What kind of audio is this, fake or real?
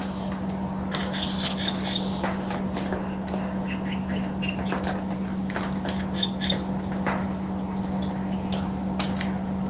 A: real